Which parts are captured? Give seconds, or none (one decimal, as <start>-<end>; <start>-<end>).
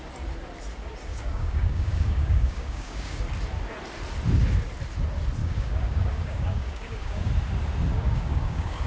0.0-1.1; 3.2-5.4; 7.3-7.9